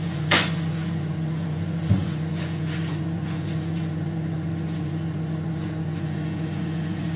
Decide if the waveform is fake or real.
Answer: fake